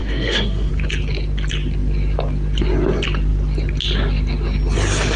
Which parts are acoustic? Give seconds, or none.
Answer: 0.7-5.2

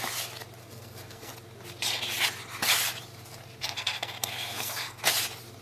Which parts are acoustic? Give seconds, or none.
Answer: 0.0-0.6; 1.3-3.6; 5.0-5.6

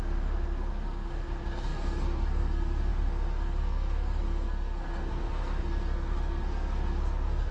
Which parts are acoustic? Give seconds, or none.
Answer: none

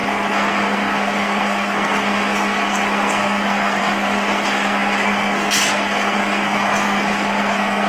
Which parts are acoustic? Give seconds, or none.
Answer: none

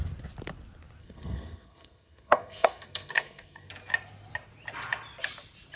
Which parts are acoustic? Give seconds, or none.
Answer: 0.0-1.0; 3.7-5.8

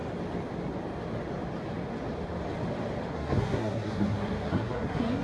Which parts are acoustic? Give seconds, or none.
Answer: 0.0-3.1

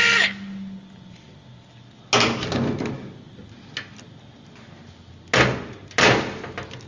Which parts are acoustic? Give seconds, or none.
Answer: 0.0-6.9